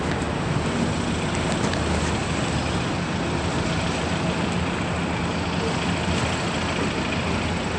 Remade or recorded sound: recorded